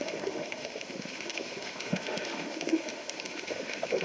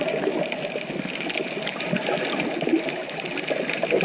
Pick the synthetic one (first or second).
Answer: first